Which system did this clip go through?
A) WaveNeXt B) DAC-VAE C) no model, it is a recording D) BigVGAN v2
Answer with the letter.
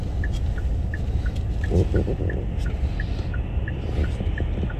C